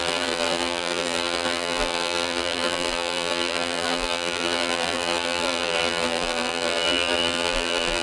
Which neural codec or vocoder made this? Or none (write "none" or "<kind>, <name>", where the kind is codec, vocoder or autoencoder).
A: vocoder, BigVGAN v2